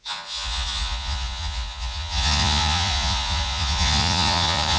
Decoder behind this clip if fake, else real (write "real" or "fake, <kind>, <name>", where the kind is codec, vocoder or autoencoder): fake, vocoder, Vocos